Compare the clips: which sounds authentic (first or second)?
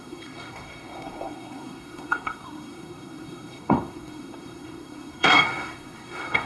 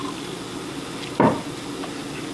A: second